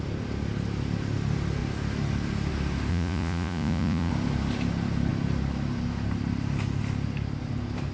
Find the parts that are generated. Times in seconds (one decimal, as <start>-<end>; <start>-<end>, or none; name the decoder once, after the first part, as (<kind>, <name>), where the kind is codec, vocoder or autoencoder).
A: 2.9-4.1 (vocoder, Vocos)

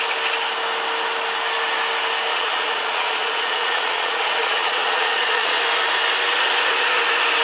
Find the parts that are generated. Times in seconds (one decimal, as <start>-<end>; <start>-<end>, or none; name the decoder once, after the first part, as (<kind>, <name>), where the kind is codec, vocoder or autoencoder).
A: 2.3-5.6 (vocoder, Vocos)

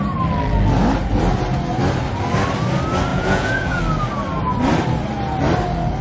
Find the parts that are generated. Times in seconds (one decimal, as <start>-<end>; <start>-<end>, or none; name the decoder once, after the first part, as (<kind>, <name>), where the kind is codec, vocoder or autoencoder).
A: 3.1-3.8 (vocoder, Vocos)